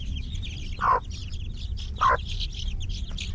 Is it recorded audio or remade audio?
recorded